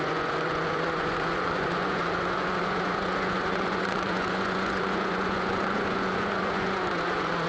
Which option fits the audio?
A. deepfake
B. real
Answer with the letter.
A